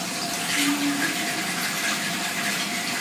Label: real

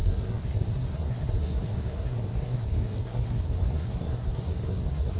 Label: fake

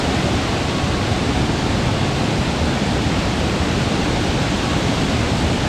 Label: real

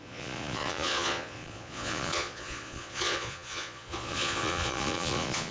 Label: fake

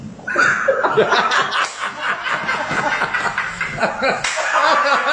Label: real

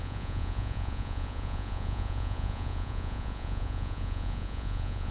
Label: fake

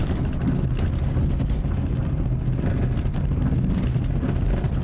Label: real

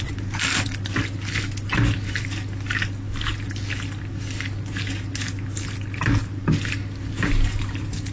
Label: real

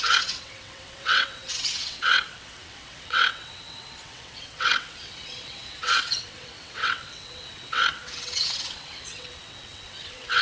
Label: fake